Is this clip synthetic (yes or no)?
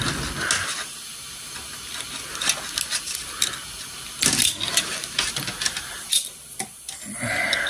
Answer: no